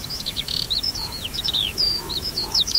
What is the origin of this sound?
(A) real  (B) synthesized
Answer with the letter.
B